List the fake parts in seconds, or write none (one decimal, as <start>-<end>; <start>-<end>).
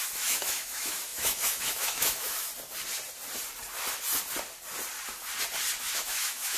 0.0-2.5; 5.8-6.6